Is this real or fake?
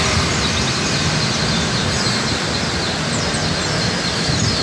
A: real